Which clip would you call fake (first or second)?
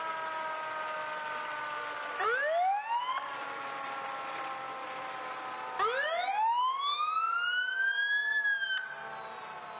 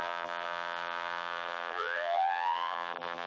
second